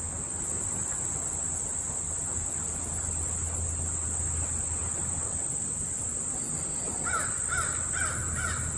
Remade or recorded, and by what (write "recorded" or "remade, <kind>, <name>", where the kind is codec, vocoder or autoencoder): recorded